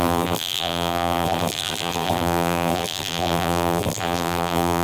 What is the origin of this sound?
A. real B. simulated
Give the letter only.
B